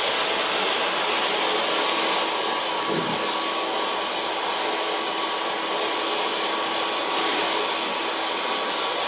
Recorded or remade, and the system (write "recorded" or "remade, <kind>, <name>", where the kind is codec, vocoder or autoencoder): recorded